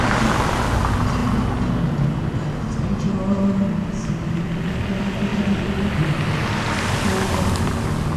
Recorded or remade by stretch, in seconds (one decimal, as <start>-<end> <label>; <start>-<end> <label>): 0.0-8.2 recorded